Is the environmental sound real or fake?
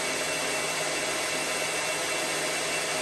real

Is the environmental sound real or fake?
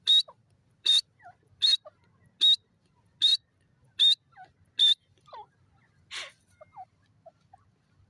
real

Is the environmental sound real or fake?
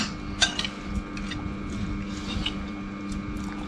real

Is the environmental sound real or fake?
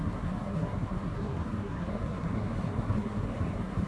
fake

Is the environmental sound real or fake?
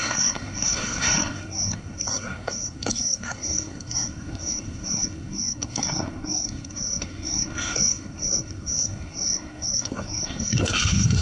fake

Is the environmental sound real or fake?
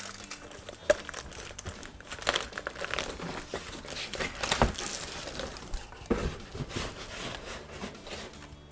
real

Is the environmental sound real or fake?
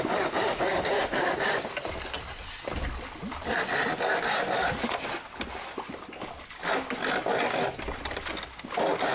real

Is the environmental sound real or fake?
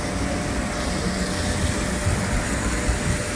real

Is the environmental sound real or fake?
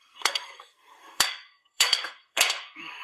fake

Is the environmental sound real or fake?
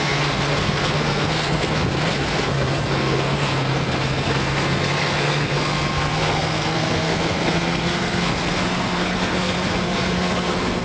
fake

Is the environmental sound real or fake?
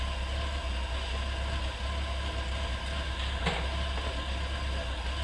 real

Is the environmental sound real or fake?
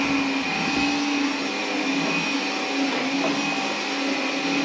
real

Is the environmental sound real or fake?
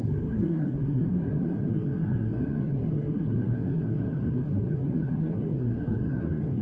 fake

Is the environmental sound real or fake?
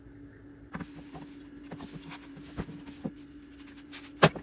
real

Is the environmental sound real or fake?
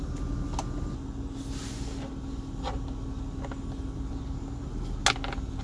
real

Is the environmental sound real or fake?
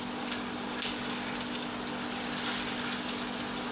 real